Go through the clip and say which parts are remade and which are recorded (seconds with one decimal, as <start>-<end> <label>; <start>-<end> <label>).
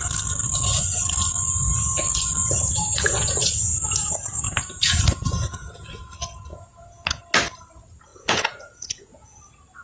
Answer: 0.0-2.4 recorded; 2.4-6.1 remade; 6.1-6.5 recorded; 6.5-7.2 remade; 7.2-8.1 recorded; 8.1-9.4 remade; 9.4-9.8 recorded